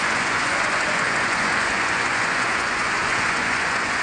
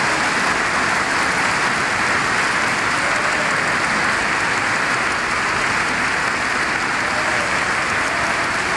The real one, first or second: second